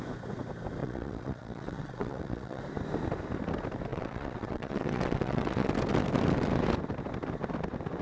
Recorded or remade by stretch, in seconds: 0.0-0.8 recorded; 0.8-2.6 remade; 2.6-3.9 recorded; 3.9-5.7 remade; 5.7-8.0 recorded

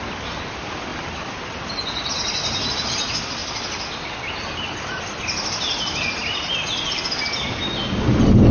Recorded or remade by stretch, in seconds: 0.0-8.5 recorded

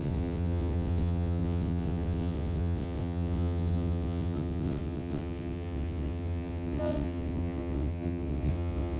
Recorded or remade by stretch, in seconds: 0.0-9.0 remade

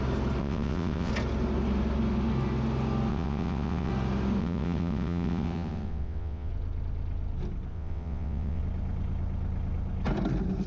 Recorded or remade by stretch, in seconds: 0.0-0.4 recorded; 0.4-1.1 remade; 1.1-3.1 recorded; 3.1-3.9 remade; 3.9-4.4 recorded; 4.4-6.5 remade; 6.5-7.7 recorded; 7.7-8.6 remade; 8.6-10.7 recorded

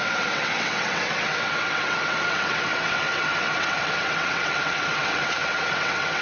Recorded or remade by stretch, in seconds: 0.0-6.2 remade

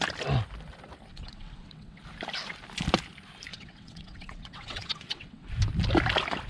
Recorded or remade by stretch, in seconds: 0.0-1.1 recorded; 1.1-2.0 remade; 2.0-3.5 recorded; 3.5-5.5 remade; 5.5-6.5 recorded

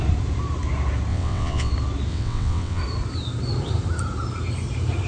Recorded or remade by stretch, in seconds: 0.0-1.1 recorded; 1.1-1.7 remade; 1.7-2.1 recorded; 2.1-2.8 remade; 2.8-5.1 recorded

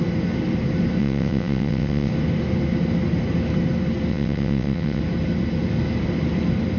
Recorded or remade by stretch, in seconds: 0.0-1.0 recorded; 1.0-2.1 remade; 2.1-4.1 recorded; 4.1-5.0 remade; 5.0-6.8 recorded